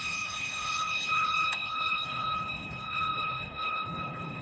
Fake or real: fake